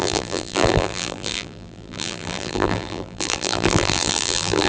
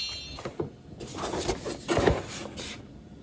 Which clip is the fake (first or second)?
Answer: first